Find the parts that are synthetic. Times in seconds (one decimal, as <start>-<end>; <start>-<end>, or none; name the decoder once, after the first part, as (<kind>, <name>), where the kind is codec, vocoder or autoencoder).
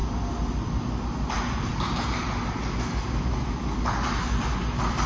none